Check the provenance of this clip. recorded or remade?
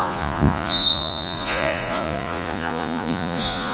remade